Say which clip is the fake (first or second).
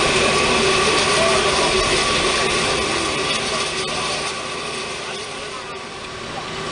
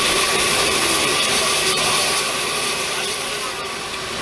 second